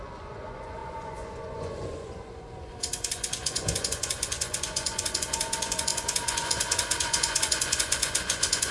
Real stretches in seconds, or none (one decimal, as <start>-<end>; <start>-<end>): none